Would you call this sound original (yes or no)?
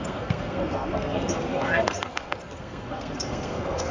no